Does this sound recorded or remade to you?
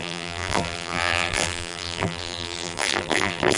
remade